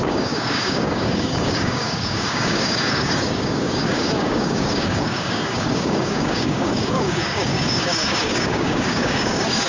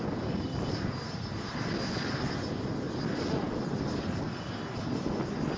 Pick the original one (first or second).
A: second